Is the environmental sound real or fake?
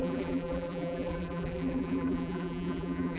fake